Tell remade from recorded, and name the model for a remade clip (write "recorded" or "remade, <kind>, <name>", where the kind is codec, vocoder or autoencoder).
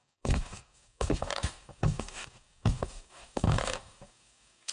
remade, codec, DAC